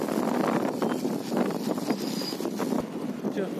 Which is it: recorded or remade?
recorded